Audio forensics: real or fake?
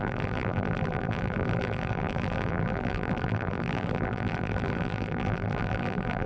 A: fake